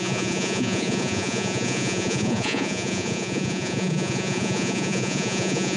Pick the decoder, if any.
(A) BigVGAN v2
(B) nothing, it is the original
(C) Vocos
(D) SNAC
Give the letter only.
C